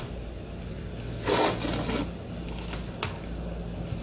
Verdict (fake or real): real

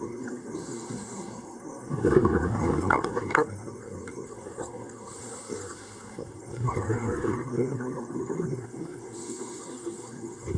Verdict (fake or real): fake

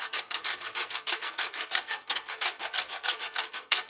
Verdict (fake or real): fake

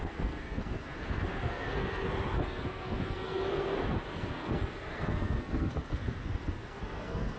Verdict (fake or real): fake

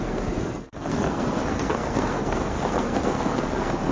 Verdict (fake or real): fake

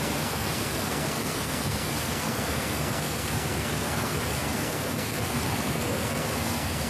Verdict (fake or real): fake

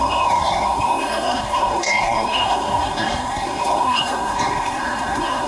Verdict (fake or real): fake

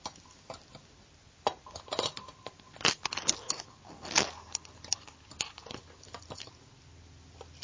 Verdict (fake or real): real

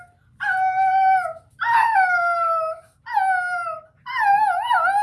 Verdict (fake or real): real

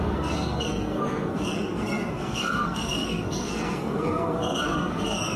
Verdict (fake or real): fake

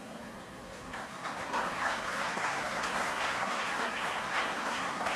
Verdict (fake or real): fake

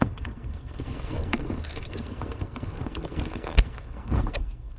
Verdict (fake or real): fake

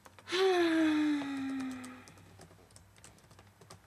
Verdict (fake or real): real